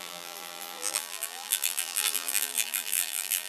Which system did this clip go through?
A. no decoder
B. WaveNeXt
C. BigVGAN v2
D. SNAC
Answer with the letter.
C